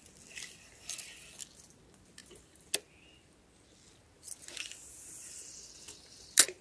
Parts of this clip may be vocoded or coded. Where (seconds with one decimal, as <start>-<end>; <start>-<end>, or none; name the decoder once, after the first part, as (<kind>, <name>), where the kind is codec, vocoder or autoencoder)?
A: none